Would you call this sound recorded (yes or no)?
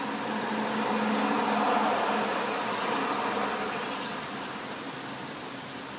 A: yes